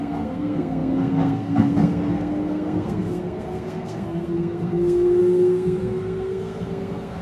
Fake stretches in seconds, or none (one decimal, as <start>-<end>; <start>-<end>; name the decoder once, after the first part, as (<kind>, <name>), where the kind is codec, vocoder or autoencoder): 0.0-7.2 (codec, SNAC)